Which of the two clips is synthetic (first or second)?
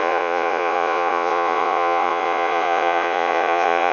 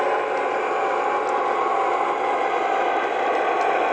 first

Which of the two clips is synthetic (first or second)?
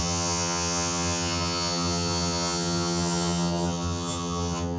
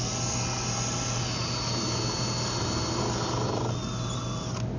first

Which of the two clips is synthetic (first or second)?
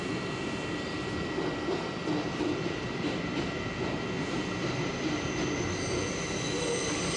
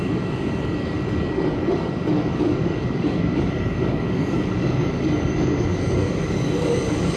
second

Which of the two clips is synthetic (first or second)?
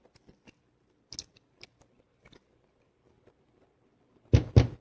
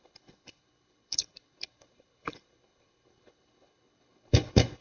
second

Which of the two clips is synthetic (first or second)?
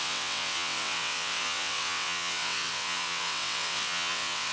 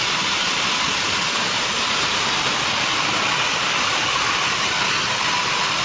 first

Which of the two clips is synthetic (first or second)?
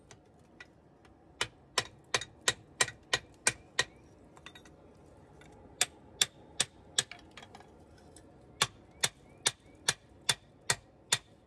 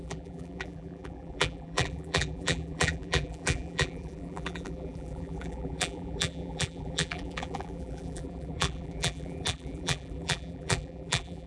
second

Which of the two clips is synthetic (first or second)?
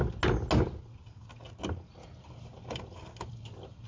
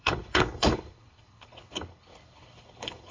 second